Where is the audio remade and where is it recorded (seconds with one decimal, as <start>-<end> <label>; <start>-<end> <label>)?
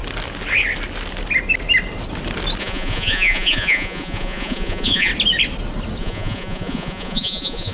0.0-2.6 recorded; 2.6-5.1 remade; 5.1-6.0 recorded; 6.0-7.7 remade